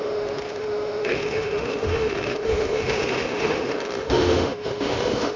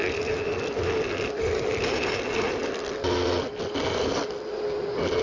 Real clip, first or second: second